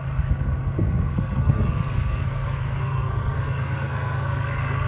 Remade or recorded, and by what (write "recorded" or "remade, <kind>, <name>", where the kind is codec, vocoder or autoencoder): remade, codec, SNAC